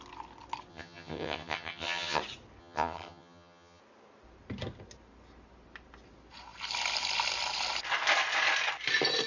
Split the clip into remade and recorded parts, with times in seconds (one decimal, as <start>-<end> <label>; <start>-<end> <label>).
0.0-0.7 recorded; 0.7-2.2 remade; 2.2-2.6 recorded; 2.6-3.8 remade; 3.8-9.3 recorded